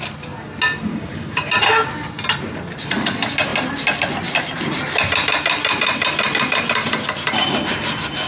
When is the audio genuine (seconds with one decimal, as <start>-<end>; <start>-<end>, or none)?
0.0-0.9; 1.5-8.3